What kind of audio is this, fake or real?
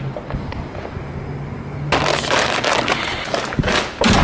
real